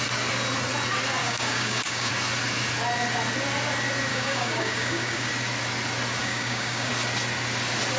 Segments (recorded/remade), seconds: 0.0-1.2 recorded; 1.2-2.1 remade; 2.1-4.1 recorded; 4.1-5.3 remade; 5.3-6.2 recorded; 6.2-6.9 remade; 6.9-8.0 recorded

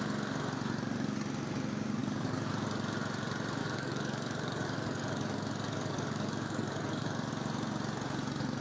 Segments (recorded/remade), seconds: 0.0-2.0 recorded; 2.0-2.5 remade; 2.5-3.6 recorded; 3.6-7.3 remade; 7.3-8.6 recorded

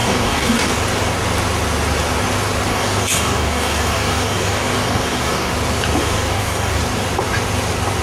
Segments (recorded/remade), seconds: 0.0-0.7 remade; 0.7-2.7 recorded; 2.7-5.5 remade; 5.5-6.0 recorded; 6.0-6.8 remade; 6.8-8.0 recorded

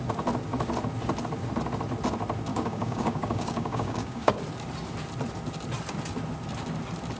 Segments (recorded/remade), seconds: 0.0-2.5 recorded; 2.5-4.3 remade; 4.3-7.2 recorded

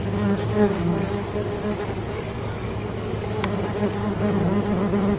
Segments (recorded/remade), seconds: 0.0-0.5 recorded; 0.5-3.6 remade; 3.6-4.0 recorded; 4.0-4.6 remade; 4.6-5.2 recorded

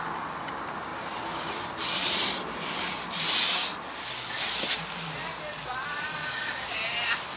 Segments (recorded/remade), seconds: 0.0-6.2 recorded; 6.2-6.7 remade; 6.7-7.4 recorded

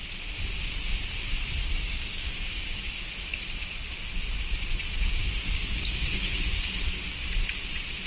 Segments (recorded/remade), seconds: 0.0-1.6 recorded; 1.6-3.1 remade; 3.1-5.2 recorded; 5.2-7.2 remade; 7.2-8.1 recorded